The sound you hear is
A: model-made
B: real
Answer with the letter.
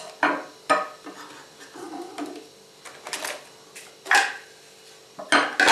B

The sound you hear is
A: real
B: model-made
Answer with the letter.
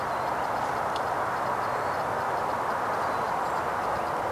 A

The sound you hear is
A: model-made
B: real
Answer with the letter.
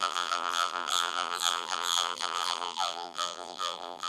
A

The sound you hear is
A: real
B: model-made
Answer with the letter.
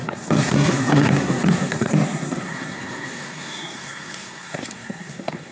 B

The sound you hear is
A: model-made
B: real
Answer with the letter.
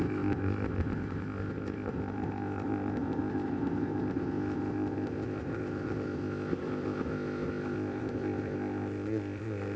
A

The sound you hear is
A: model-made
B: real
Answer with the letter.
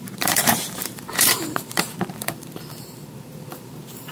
A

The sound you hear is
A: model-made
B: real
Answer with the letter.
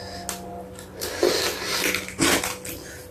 B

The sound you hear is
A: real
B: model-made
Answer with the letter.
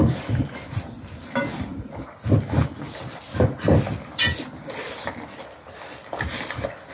A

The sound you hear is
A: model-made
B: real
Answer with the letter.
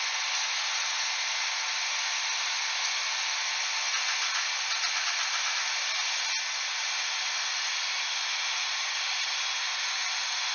B